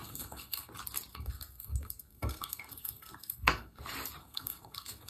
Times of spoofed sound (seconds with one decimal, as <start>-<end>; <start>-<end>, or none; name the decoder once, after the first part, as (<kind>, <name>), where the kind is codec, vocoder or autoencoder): 0.0-0.7 (codec, SNAC); 1.1-3.8; 4.2-5.1